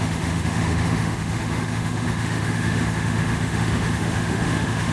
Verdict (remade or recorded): remade